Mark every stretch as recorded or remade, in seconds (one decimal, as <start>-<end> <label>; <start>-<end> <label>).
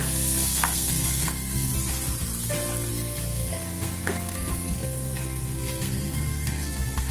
0.0-1.7 remade; 1.7-2.9 recorded; 2.9-7.1 remade